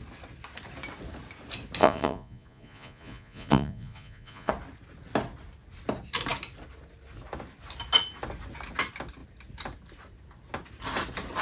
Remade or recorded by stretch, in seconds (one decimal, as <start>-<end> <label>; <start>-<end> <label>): 0.0-1.8 recorded; 1.8-4.5 remade; 4.5-11.4 recorded